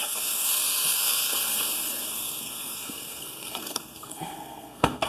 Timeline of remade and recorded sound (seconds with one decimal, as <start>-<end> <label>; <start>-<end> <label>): 0.0-5.1 remade